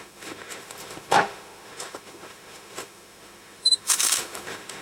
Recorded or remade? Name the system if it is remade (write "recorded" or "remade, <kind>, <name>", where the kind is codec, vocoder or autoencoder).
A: remade, autoencoder, DAC-VAE